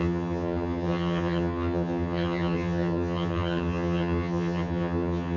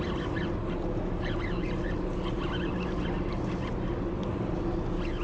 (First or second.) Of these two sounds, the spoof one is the first